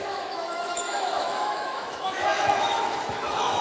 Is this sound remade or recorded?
remade